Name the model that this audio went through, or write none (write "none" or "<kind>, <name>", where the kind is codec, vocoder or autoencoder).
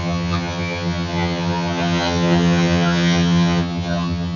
vocoder, HiFi-GAN